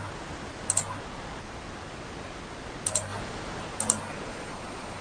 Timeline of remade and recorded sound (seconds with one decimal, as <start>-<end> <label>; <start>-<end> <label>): 0.0-4.3 recorded; 4.3-5.0 remade